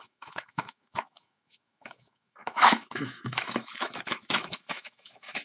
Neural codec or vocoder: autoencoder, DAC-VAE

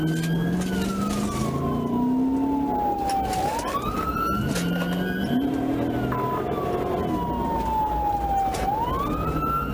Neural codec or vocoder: none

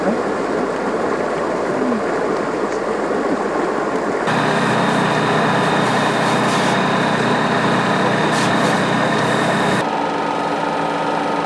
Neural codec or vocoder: none